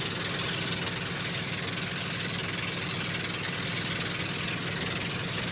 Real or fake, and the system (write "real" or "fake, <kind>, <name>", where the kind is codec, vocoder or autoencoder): real